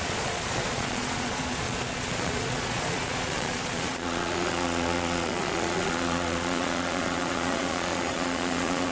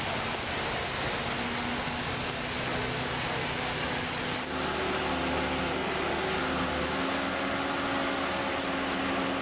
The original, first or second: second